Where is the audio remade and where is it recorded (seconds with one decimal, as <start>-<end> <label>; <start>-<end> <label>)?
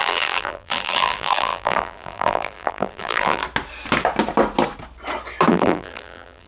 0.0-3.4 remade; 3.4-5.5 recorded; 5.5-6.5 remade